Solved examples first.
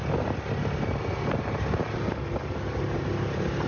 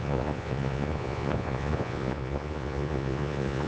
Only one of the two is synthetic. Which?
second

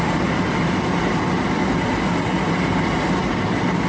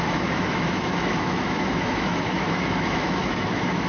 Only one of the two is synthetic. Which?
second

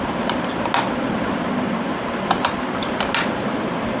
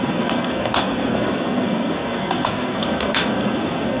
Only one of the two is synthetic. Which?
second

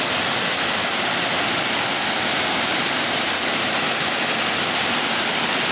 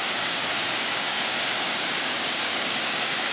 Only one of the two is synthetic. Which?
second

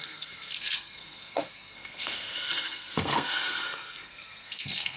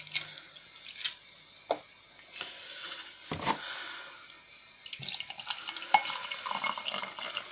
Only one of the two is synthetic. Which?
first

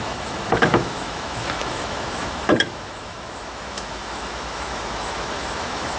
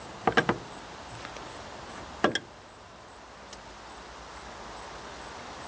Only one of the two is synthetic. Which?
first